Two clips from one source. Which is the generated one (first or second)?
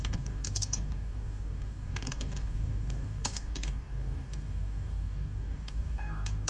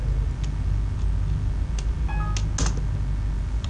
first